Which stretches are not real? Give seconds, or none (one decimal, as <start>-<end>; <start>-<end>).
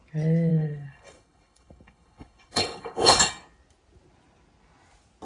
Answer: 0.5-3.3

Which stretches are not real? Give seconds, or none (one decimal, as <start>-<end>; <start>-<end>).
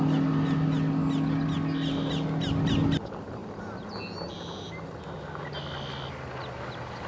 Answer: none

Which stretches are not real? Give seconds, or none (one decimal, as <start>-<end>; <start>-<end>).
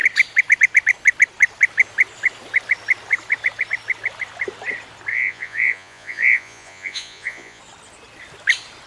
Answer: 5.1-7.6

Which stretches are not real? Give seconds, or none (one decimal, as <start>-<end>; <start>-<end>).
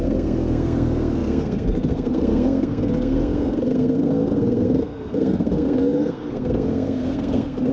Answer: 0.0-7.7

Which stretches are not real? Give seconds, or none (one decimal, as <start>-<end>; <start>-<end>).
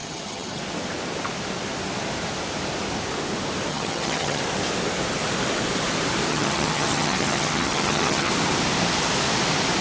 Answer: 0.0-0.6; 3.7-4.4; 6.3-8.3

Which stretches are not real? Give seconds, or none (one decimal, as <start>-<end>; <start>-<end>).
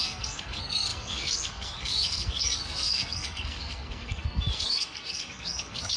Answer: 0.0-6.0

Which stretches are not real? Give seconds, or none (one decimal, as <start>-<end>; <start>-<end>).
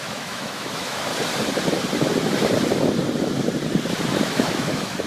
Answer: 0.0-1.1; 4.2-5.1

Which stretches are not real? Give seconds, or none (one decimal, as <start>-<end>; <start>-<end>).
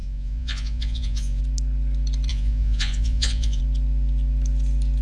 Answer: 0.0-1.4; 2.3-3.6